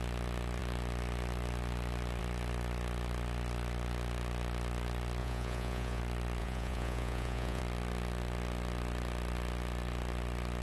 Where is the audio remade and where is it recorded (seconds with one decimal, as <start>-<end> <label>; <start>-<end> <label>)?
0.0-5.2 recorded; 5.2-6.0 remade; 6.0-6.4 recorded; 6.4-7.6 remade; 7.6-10.6 recorded